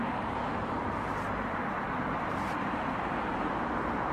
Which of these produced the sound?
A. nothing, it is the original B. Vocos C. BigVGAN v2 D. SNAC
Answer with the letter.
C